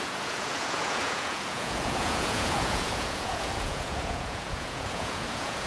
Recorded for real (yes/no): no